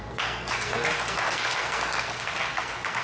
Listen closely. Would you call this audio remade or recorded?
remade